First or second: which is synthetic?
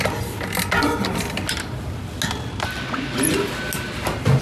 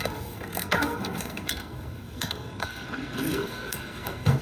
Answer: second